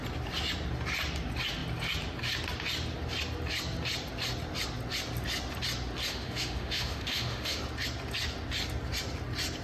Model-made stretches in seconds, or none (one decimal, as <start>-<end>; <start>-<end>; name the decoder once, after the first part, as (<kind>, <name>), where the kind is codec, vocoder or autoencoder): 6.1-7.6 (autoencoder, DAC-VAE)